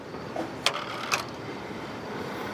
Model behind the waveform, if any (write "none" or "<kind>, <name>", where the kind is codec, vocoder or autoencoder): none